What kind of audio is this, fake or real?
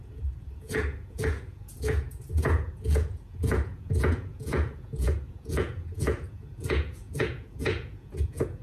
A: fake